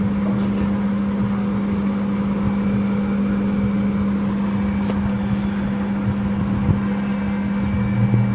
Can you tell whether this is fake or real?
real